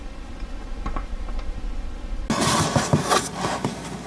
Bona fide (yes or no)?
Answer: yes